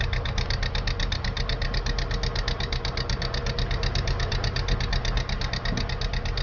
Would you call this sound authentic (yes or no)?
yes